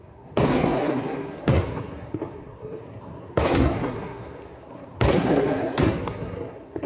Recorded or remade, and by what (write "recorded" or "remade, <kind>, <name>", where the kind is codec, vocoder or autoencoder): remade, codec, SNAC